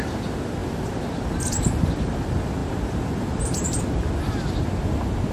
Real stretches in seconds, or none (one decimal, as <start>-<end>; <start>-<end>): 0.0-2.6; 3.8-5.3